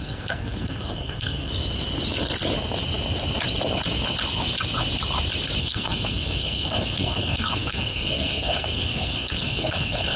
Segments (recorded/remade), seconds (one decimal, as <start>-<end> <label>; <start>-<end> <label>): 0.0-1.5 remade; 1.5-5.6 recorded; 5.6-10.2 remade